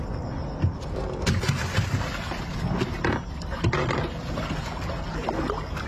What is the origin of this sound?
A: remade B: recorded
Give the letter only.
B